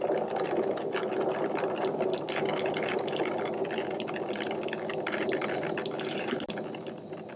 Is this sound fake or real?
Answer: real